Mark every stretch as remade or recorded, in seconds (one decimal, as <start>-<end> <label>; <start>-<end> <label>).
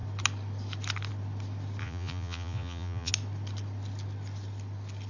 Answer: 0.0-1.8 recorded; 1.8-3.1 remade; 3.1-5.1 recorded